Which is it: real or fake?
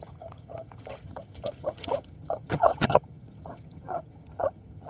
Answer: fake